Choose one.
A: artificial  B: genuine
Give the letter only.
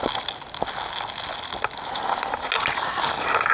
B